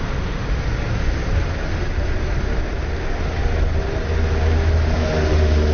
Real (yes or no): yes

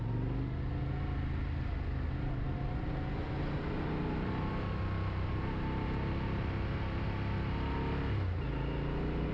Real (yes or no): yes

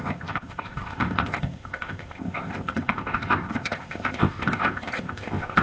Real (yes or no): no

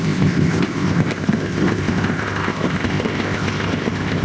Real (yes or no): no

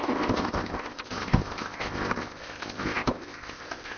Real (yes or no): no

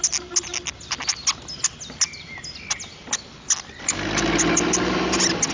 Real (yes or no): yes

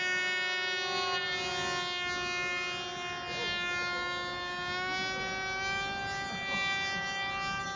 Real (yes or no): yes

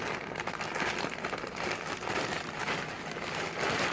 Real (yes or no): yes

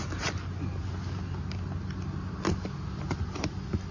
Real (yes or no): yes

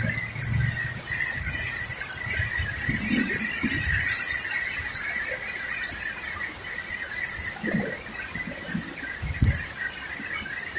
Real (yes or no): yes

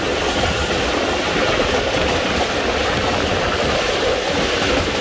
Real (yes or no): yes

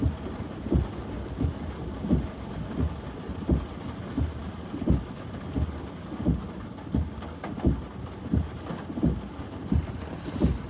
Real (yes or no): yes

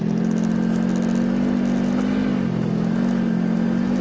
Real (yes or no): yes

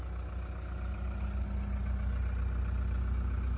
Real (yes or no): yes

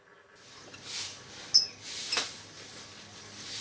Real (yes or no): yes